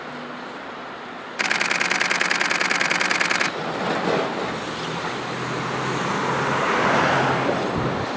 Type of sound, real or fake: real